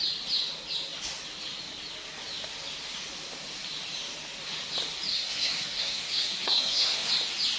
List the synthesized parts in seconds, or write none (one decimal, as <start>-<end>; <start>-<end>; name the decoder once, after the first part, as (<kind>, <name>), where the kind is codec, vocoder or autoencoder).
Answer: 5.1-7.1 (codec, SNAC)

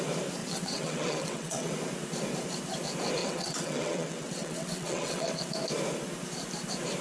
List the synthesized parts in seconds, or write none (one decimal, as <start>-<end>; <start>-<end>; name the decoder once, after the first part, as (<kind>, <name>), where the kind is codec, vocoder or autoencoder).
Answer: 0.4-1.7 (vocoder, WaveNeXt); 3.2-5.4